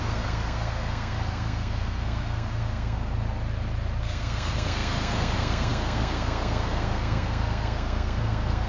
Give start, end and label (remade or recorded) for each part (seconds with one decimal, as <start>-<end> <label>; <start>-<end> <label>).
0.0-3.2 remade; 3.2-4.0 recorded; 4.0-8.7 remade